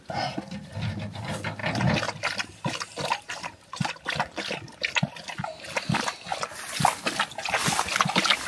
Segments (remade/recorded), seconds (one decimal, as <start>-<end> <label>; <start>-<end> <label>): 0.0-8.5 recorded